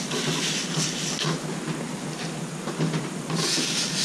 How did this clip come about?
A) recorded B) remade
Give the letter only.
A